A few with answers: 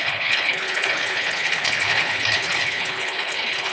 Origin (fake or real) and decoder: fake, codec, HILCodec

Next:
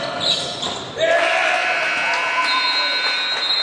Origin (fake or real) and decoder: real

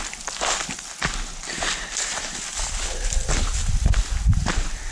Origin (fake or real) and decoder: real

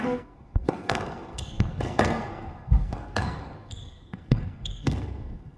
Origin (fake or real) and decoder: fake, codec, SNAC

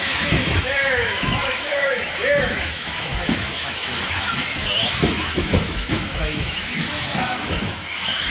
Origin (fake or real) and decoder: fake, autoencoder, DAC-VAE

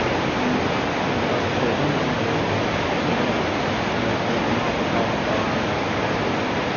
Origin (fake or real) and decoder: real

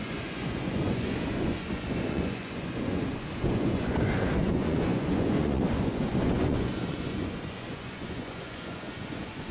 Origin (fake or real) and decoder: fake, vocoder, Vocos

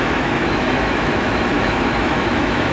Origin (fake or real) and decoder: fake, autoencoder, DAC-VAE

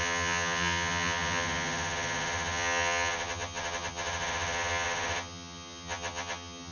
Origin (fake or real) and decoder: fake, vocoder, HiFi-GAN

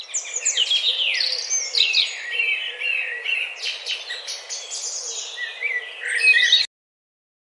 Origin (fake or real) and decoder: real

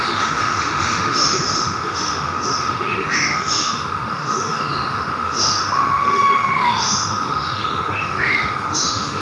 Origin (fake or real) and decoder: fake, autoencoder, DAC-VAE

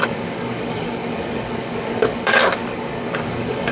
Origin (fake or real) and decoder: fake, codec, DAC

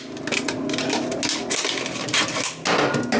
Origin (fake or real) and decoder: real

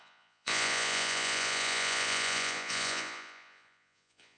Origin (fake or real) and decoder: fake, vocoder, Vocos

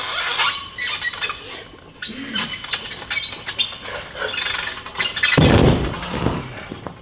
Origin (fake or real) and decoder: real